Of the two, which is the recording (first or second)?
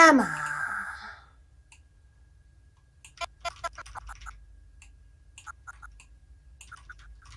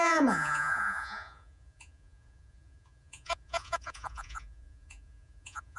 first